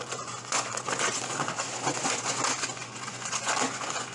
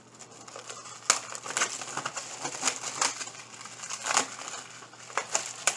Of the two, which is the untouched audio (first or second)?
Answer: second